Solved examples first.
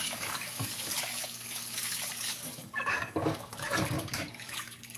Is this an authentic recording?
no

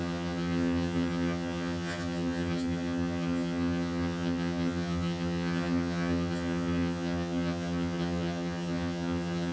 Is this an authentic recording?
no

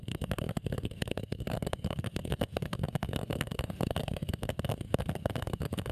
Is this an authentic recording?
no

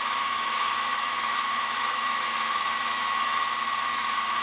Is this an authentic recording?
no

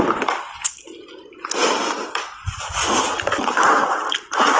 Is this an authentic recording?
yes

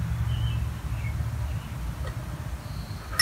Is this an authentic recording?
yes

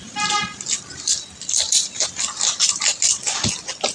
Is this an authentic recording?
yes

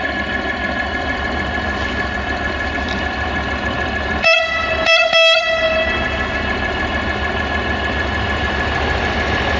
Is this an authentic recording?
yes